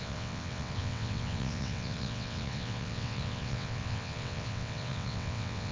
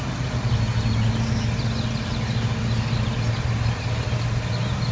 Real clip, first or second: second